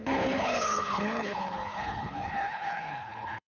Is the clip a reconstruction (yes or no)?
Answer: yes